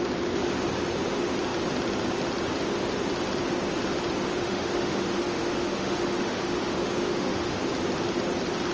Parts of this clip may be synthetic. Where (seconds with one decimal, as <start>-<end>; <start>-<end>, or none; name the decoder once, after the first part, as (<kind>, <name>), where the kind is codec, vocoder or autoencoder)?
4.3-7.6 (autoencoder, DAC-VAE)